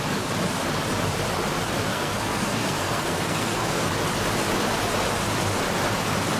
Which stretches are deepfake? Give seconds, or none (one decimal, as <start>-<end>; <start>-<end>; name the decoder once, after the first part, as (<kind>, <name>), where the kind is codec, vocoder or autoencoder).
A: 1.9-3.9 (codec, SNAC)